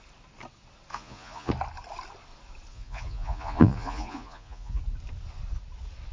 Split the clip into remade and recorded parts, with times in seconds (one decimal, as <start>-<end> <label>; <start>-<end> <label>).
0.0-0.9 recorded; 0.9-1.5 remade; 1.5-2.7 recorded; 2.7-4.8 remade; 4.8-6.1 recorded